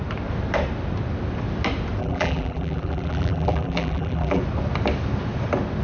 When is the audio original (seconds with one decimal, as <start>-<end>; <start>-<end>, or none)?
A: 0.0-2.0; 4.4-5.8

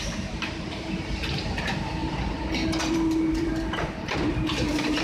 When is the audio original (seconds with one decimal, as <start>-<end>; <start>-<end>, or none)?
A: 2.0-2.8

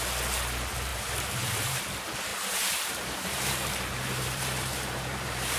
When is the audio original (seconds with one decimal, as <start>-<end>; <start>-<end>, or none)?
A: 0.0-0.9; 1.8-2.3

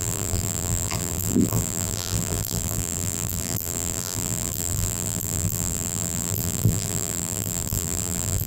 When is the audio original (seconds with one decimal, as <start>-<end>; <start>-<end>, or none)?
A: none

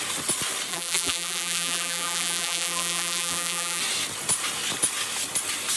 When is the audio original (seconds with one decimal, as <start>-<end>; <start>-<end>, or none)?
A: 0.0-0.7; 3.8-5.8

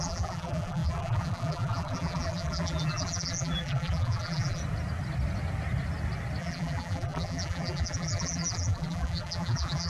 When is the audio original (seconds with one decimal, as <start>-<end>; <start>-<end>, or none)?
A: 4.6-6.4